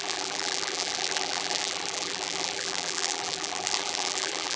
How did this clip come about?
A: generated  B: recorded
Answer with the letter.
A